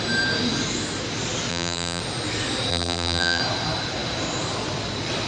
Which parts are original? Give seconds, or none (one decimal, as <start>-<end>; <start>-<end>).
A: 0.0-1.5; 2.0-2.7; 3.4-5.3